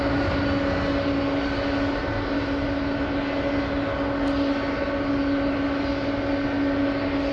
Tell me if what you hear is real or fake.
real